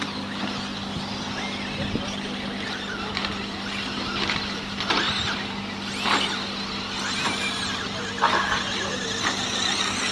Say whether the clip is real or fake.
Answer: real